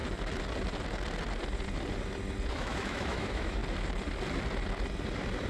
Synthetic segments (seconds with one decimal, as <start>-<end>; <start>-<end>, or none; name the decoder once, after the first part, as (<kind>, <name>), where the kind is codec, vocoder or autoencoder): 2.5-3.6 (autoencoder, DAC-VAE)